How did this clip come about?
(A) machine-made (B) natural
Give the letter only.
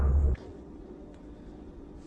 A